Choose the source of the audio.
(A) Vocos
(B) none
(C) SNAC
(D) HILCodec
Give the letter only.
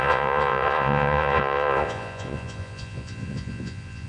A